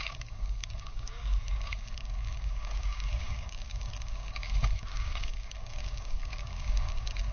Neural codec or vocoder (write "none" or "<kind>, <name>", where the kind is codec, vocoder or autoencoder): codec, DAC